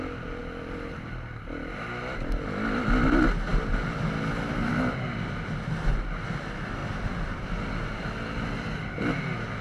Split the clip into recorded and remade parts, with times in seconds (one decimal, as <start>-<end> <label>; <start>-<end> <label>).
0.0-6.8 recorded; 6.8-7.5 remade; 7.5-9.6 recorded